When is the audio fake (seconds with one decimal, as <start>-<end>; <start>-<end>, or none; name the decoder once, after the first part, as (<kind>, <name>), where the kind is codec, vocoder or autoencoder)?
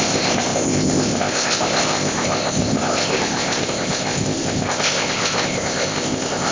0.0-6.5 (codec, ZipCodec)